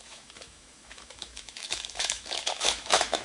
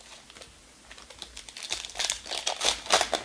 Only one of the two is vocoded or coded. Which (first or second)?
first